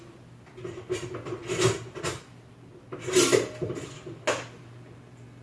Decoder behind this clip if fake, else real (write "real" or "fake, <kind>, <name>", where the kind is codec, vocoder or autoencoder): real